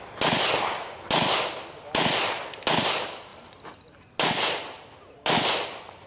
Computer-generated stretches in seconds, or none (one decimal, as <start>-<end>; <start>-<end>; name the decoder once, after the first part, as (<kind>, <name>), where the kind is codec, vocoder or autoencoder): none